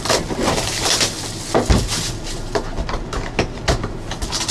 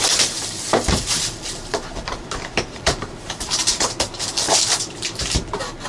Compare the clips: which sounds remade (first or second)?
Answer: second